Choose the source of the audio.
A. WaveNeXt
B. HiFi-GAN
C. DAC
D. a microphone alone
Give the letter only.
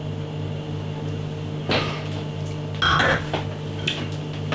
D